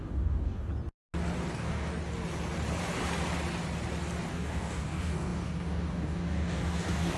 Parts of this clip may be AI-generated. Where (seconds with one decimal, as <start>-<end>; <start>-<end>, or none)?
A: 0.0-0.7; 1.5-1.9; 4.3-7.2